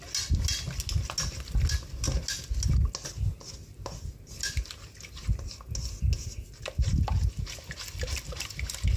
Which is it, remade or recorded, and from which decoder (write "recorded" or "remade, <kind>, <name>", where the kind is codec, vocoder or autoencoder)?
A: recorded